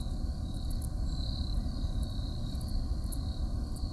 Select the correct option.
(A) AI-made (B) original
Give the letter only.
B